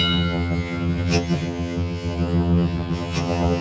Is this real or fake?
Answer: fake